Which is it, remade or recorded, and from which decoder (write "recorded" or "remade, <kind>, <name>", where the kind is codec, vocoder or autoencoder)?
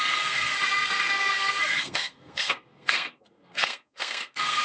remade, codec, SNAC